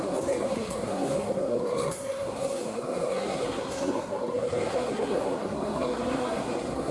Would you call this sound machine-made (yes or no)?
yes